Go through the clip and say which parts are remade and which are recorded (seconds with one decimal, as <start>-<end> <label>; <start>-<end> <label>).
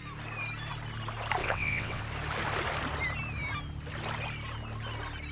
0.0-1.4 recorded; 1.4-2.0 remade; 2.0-5.3 recorded